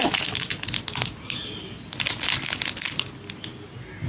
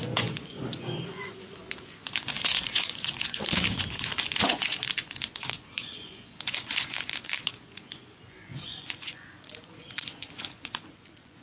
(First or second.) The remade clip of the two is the second